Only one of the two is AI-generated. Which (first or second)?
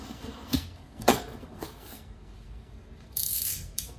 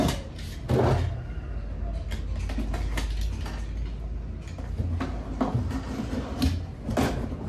first